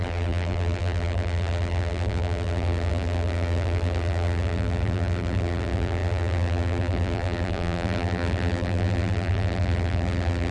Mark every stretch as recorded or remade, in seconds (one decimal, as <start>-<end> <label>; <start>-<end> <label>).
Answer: 0.0-10.5 remade